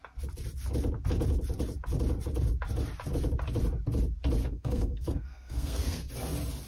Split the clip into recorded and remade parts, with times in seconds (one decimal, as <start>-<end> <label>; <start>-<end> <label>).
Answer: 0.0-4.4 recorded; 4.4-6.1 remade; 6.1-6.7 recorded